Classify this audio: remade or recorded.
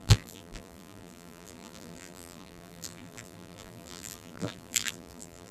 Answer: remade